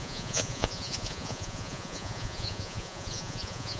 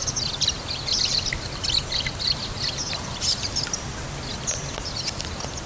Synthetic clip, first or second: first